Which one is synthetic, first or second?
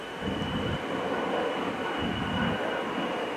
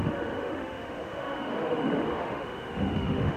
second